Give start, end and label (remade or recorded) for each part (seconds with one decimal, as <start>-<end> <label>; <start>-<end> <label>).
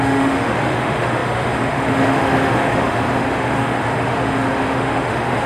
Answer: 0.0-5.5 remade